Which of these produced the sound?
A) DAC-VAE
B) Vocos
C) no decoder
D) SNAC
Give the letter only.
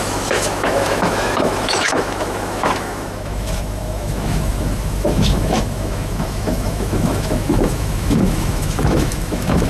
A